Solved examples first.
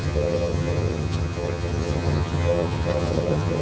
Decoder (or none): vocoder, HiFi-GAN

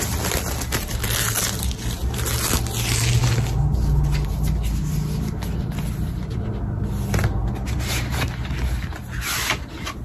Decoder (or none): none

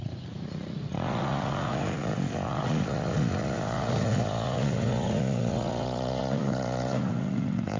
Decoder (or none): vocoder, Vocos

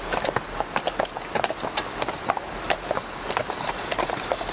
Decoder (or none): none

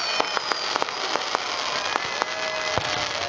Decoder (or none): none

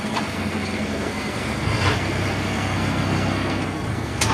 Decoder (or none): codec, SNAC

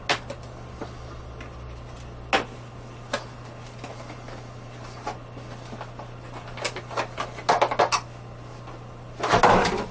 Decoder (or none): none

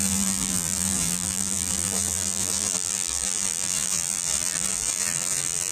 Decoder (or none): vocoder, BigVGAN v2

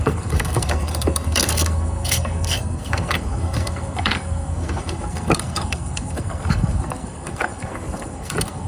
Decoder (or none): codec, SNAC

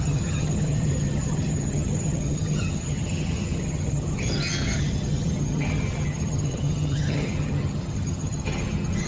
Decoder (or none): vocoder, HiFi-GAN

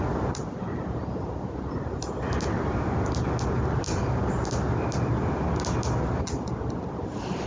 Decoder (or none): none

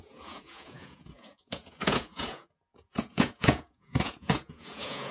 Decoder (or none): vocoder, Vocos